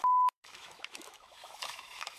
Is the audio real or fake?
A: fake